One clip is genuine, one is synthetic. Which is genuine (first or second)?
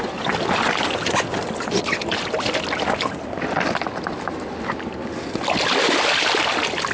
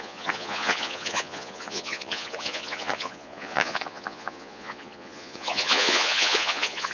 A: first